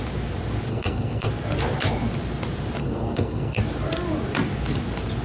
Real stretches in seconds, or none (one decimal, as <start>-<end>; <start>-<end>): 0.0-0.7; 1.3-2.8; 3.6-5.2